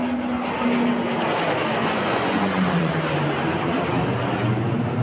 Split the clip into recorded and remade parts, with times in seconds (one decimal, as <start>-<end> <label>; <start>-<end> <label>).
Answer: 0.0-1.8 recorded; 1.8-2.9 remade; 2.9-5.0 recorded